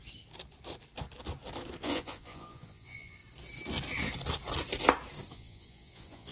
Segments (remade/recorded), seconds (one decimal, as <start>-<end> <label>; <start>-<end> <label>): 0.0-1.8 recorded; 1.8-3.2 remade; 3.2-5.3 recorded; 5.3-6.3 remade